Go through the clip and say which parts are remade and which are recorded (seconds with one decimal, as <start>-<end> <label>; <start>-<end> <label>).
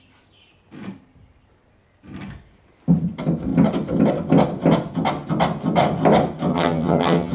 0.0-6.5 recorded; 6.5-7.3 remade